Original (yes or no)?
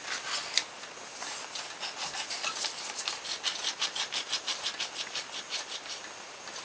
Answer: yes